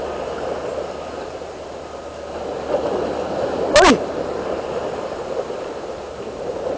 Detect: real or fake real